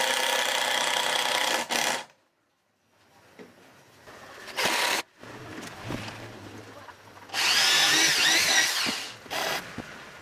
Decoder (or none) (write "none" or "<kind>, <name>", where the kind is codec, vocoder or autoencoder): none